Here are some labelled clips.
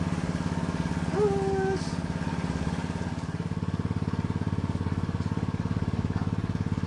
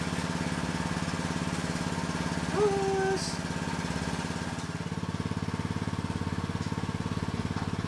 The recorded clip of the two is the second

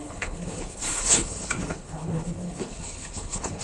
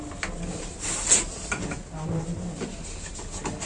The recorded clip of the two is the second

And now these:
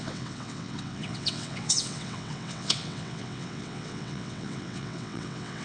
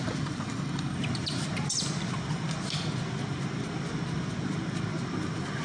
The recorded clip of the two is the second